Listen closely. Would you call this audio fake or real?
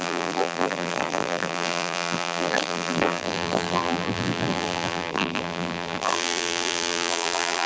fake